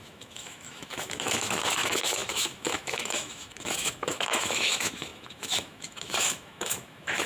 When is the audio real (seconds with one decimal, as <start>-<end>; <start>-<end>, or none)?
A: none